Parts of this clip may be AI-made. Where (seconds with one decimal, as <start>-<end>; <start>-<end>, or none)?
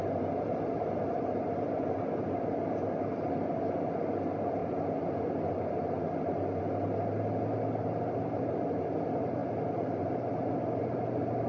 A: none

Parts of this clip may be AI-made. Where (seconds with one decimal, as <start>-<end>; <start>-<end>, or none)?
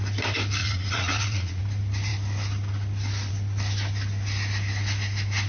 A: 0.6-1.6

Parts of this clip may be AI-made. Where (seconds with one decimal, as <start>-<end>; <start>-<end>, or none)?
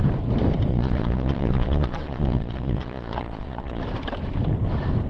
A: 0.7-3.8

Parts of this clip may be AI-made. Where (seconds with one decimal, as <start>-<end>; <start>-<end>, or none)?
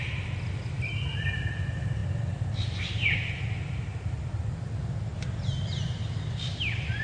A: none